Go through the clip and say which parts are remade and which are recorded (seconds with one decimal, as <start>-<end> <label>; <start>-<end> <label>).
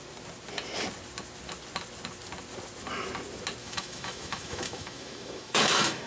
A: 0.0-3.6 recorded; 3.6-6.1 remade